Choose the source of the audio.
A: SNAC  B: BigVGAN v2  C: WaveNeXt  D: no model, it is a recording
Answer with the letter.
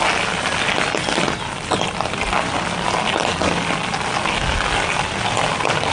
D